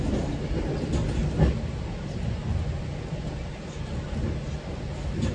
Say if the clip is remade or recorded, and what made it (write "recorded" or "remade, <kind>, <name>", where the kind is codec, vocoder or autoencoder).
recorded